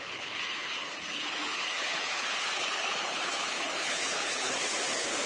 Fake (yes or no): yes